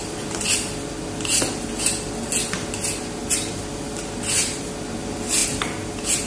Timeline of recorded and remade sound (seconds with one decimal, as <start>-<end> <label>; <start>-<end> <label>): 0.0-6.3 recorded